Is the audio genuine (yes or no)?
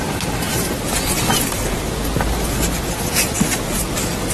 yes